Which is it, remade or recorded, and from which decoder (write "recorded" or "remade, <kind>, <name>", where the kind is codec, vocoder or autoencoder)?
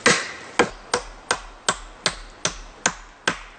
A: recorded